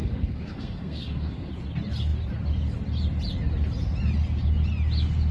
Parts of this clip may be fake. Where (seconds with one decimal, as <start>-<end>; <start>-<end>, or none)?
0.0-1.5